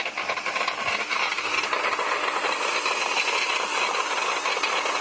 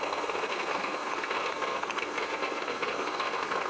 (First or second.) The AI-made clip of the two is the second